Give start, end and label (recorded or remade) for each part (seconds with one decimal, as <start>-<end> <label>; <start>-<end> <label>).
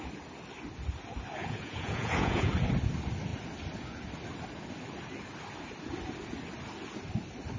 0.0-1.4 recorded; 1.4-2.5 remade; 2.5-7.6 recorded